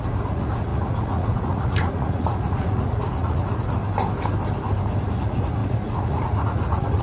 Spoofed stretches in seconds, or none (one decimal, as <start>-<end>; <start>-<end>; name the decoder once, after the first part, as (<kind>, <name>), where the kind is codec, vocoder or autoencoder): 0.0-3.8 (vocoder, Vocos); 5.1-7.0